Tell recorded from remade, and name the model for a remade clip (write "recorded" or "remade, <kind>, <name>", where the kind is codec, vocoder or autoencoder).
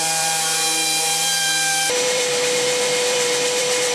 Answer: remade, vocoder, BigVGAN v2